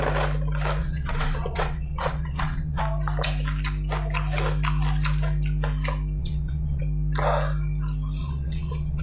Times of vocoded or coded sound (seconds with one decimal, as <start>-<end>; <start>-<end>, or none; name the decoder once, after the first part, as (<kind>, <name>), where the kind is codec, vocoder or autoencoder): 0.8-2.8 (vocoder, WaveNeXt); 6.2-6.8; 8.2-9.0